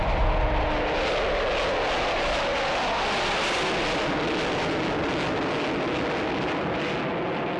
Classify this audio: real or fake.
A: real